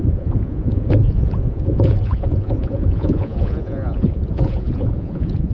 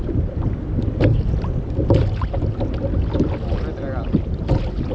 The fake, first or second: first